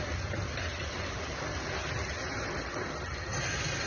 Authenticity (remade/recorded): recorded